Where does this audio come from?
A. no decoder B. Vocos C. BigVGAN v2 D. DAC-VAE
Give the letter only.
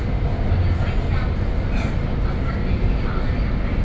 A